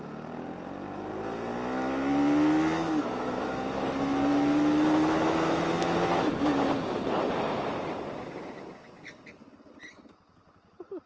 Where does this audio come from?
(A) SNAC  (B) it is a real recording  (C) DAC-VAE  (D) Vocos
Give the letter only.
B